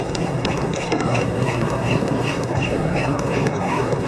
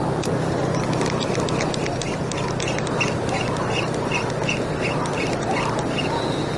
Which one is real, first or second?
second